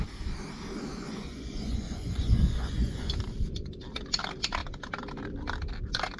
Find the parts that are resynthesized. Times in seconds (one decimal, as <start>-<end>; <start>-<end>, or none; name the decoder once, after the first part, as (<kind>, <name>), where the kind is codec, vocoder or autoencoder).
0.9-3.1 (vocoder, Vocos)